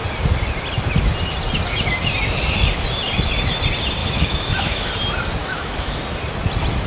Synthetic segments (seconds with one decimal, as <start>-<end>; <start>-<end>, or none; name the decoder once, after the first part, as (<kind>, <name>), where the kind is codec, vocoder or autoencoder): 4.0-4.9 (autoencoder, DAC-VAE); 5.4-6.0